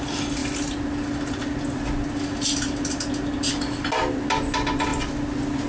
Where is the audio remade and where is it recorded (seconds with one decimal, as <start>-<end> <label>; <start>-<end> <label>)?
0.0-5.7 recorded